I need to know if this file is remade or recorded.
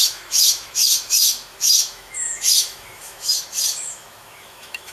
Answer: remade